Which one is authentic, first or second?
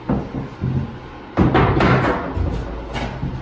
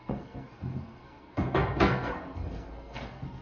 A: first